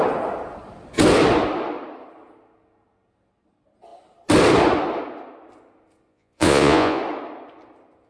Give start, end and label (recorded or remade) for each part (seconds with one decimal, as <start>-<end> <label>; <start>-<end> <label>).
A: 0.0-6.1 recorded; 6.1-7.0 remade; 7.0-8.1 recorded